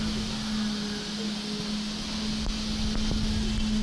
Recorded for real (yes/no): yes